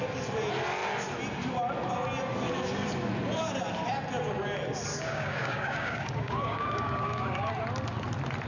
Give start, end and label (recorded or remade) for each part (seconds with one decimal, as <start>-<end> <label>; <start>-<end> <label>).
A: 0.0-4.9 recorded; 4.9-7.5 remade; 7.5-8.5 recorded